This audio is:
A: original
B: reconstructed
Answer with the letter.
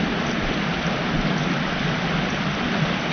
A